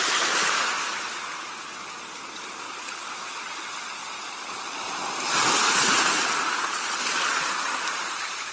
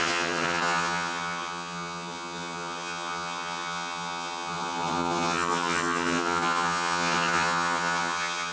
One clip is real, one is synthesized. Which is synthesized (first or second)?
second